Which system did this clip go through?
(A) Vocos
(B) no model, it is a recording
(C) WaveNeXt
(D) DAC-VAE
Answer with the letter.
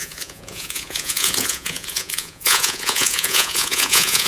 A